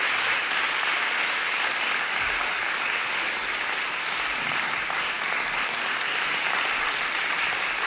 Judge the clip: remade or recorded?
recorded